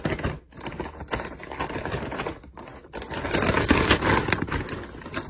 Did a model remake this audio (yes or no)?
no